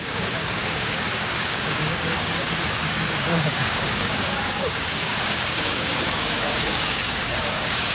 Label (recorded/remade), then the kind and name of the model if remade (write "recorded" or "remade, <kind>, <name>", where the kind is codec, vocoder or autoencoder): remade, codec, DAC